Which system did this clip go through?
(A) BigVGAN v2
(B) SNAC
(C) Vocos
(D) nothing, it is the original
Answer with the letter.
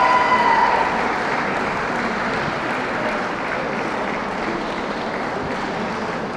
D